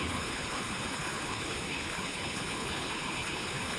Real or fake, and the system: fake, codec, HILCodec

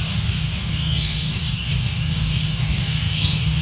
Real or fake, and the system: fake, codec, DAC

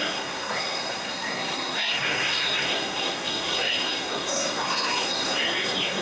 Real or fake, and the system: fake, codec, SNAC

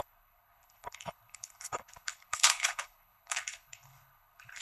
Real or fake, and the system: fake, codec, HILCodec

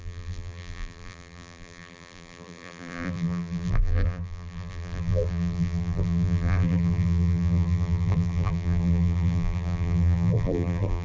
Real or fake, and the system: fake, vocoder, BigVGAN v2